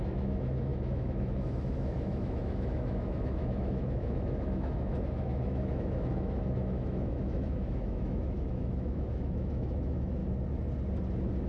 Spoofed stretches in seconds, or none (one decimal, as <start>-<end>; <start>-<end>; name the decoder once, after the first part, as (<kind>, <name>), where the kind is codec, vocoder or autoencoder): 0.0-10.2 (autoencoder, DAC-VAE)